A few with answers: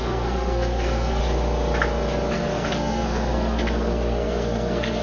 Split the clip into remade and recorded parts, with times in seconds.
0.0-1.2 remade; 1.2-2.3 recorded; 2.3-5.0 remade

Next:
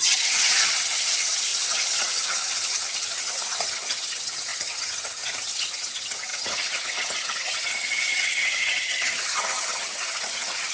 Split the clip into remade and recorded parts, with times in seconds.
0.0-10.7 remade

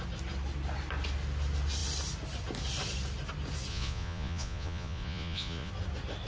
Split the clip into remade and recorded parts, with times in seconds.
0.0-3.7 recorded; 3.7-5.7 remade; 5.7-6.3 recorded

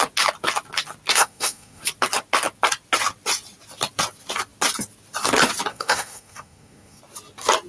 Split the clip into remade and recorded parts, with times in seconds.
0.0-1.1 recorded; 1.1-1.8 remade; 1.8-5.7 recorded; 5.7-7.0 remade; 7.0-7.7 recorded

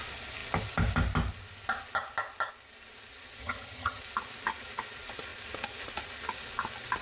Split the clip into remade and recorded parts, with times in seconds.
0.0-3.4 recorded; 3.4-4.0 remade; 4.0-7.0 recorded

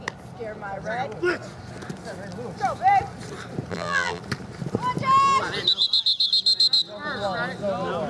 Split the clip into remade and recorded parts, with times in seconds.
0.0-3.7 recorded; 3.7-4.2 remade; 4.2-8.1 recorded

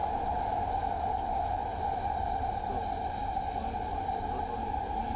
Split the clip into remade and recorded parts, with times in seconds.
0.0-5.2 recorded

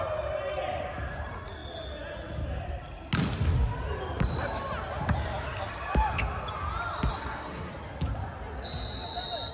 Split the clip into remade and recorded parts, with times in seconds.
0.0-7.1 recorded; 7.1-7.7 remade; 7.7-9.5 recorded